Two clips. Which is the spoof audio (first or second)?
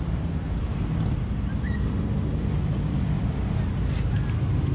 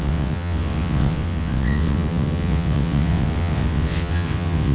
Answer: second